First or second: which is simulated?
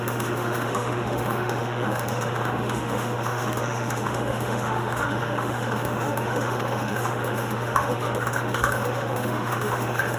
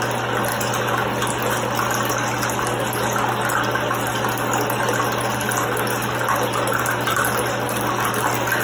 first